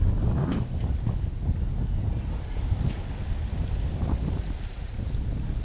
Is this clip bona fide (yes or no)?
yes